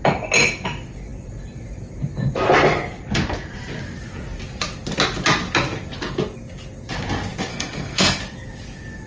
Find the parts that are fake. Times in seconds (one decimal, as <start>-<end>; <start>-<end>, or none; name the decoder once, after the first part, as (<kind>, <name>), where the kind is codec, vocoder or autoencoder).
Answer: 7.5-8.2 (codec, SNAC)

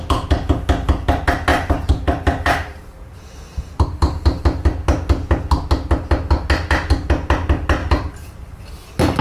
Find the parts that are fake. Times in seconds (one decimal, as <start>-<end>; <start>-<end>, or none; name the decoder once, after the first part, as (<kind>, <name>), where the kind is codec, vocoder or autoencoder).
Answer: 1.5-4.4 (vocoder, BigVGAN v2); 7.8-8.7